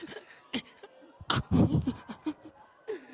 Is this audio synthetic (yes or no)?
no